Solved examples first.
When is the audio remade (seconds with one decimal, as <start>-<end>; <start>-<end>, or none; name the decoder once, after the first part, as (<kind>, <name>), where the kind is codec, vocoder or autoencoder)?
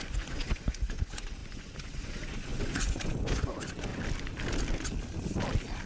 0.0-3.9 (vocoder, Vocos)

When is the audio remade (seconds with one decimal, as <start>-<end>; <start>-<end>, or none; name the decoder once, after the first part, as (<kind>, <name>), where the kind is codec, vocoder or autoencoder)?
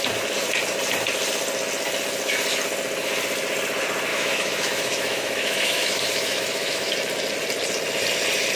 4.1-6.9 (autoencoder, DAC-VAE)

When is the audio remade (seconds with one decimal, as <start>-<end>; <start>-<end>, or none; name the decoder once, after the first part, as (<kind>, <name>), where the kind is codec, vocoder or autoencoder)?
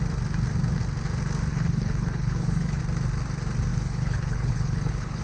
1.5-2.8 (codec, HILCodec); 3.7-5.2